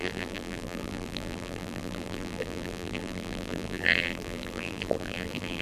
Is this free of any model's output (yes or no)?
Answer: no